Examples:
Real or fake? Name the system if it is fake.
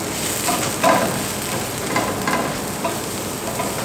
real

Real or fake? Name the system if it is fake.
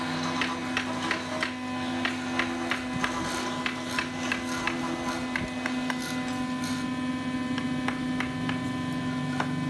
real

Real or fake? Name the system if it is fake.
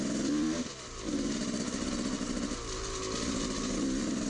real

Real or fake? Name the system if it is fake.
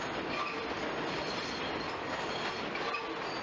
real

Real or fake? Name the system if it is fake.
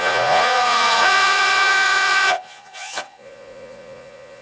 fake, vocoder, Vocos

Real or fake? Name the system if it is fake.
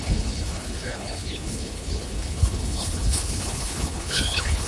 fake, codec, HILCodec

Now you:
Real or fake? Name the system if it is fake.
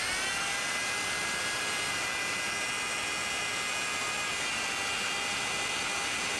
real